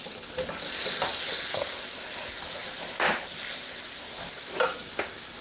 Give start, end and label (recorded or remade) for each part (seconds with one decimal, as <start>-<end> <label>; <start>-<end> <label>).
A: 0.0-5.4 recorded